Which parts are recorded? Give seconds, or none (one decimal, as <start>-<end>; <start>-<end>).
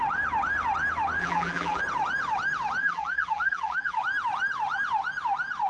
0.0-1.2; 1.8-2.8; 4.0-5.7